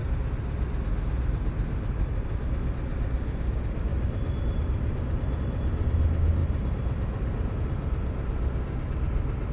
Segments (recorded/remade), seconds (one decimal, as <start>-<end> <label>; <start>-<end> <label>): 0.0-3.9 recorded; 3.9-5.4 remade; 5.4-6.4 recorded; 6.4-7.6 remade; 7.6-9.5 recorded